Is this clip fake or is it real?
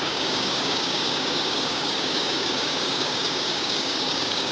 fake